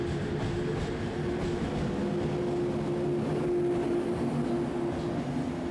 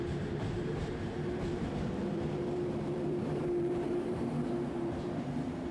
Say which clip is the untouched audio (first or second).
first